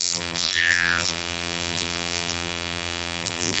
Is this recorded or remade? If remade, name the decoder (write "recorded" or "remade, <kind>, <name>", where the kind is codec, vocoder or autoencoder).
remade, vocoder, BigVGAN v2